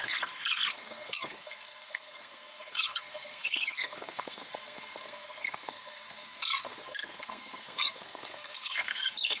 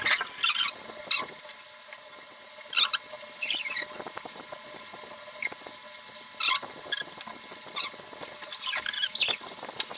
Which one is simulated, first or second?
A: first